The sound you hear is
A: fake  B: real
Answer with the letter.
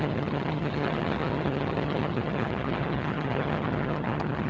A